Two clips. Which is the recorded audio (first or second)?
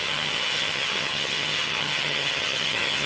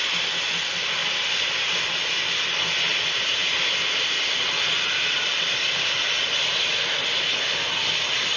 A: second